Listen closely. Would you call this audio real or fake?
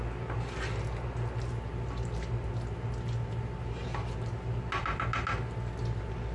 real